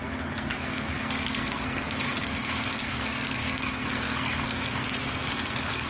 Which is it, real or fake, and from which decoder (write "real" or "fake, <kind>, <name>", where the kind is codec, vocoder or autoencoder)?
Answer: fake, codec, SNAC